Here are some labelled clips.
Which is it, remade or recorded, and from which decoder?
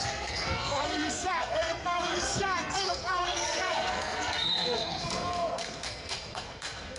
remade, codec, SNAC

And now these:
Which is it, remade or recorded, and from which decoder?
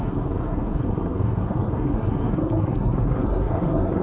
remade, codec, SNAC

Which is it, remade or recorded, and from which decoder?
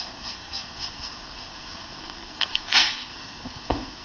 remade, codec, SNAC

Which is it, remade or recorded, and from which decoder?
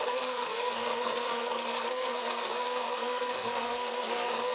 remade, codec, SNAC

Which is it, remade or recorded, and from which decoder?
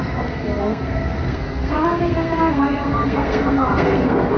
remade, codec, SNAC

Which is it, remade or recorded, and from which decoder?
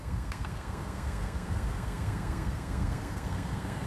remade, codec, SNAC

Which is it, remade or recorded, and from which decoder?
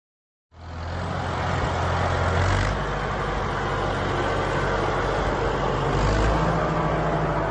recorded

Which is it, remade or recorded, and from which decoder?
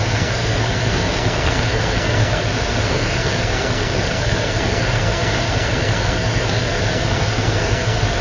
remade, codec, SNAC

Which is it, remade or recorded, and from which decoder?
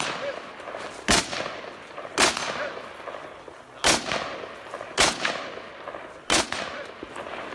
recorded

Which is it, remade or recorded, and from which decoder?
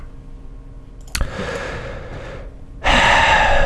recorded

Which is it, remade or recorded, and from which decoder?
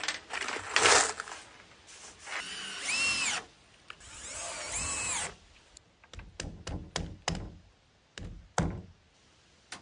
recorded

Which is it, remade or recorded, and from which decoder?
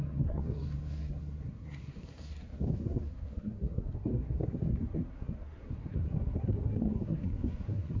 remade, codec, SNAC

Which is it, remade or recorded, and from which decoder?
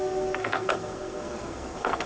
remade, codec, SNAC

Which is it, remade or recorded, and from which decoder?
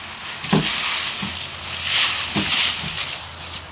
recorded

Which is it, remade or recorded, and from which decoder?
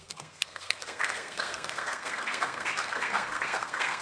remade, codec, SNAC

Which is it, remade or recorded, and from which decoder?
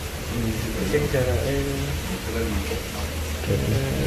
recorded